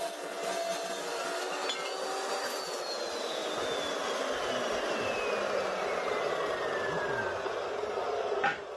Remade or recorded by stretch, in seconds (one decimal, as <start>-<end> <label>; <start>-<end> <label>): 0.0-8.8 recorded